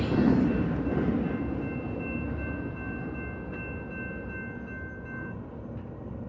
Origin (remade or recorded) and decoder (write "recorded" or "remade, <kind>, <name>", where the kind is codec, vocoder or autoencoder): recorded